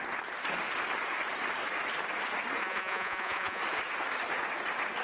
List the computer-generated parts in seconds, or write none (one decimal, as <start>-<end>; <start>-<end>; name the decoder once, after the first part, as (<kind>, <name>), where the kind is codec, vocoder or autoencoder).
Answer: 2.6-3.6 (vocoder, Vocos)